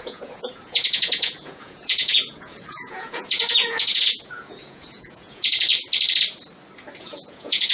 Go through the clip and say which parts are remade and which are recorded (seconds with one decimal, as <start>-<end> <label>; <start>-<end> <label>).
0.0-5.7 remade; 5.7-7.0 recorded; 7.0-7.7 remade